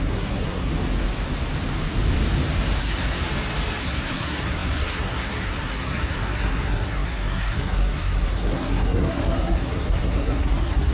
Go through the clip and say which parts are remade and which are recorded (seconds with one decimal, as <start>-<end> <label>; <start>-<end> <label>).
0.0-0.7 remade; 0.7-2.8 recorded; 2.8-3.2 remade; 3.2-3.8 recorded; 3.8-10.9 remade